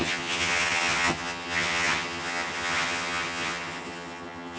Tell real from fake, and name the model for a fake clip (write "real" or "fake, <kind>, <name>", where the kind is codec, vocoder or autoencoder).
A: fake, vocoder, HiFi-GAN